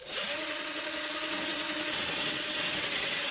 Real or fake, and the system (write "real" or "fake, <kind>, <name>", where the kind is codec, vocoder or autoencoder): fake, vocoder, WaveNeXt